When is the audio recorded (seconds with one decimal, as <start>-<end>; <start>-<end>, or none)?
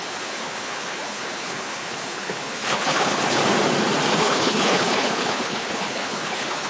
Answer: 3.4-4.1